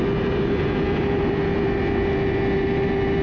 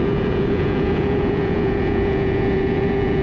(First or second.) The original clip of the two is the first